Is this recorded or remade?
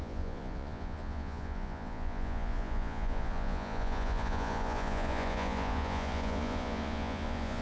remade